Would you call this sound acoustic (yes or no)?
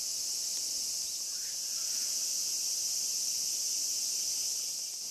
yes